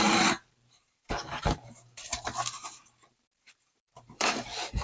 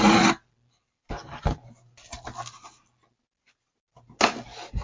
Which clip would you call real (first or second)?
second